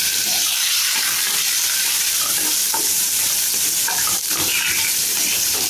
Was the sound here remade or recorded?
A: remade